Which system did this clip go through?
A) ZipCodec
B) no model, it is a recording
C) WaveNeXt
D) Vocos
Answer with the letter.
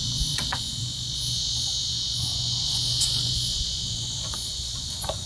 D